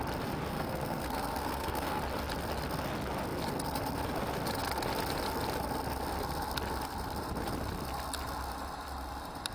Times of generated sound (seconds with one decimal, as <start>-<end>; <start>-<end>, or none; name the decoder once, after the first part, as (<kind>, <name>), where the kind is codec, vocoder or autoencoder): 0.5-2.0 (codec, SNAC)